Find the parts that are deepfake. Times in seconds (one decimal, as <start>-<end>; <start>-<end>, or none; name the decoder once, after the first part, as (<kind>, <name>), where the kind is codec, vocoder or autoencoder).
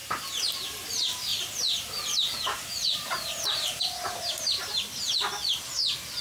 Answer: 0.0-0.9 (vocoder, BigVGAN v2); 1.3-4.9